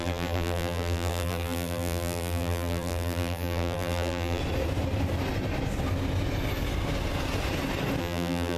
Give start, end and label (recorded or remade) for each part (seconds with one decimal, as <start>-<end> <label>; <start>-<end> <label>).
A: 0.0-4.4 remade; 4.4-8.0 recorded; 8.0-8.6 remade